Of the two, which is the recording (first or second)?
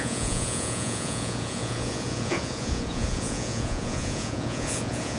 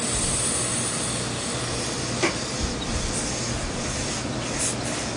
second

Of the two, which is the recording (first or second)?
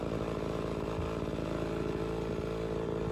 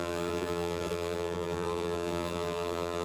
first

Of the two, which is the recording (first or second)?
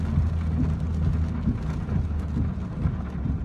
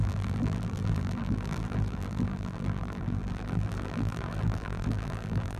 first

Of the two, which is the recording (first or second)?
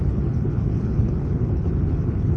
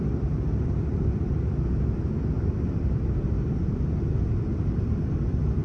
second